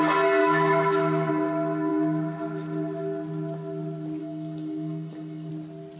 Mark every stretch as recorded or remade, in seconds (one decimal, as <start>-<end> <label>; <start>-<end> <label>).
0.0-0.4 recorded; 0.4-1.3 remade; 1.3-4.2 recorded; 4.2-5.5 remade; 5.5-6.0 recorded